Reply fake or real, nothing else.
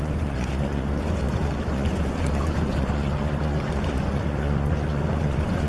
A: fake